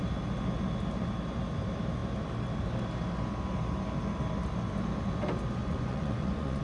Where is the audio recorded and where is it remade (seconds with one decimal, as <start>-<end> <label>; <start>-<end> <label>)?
0.0-5.6 recorded; 5.6-6.6 remade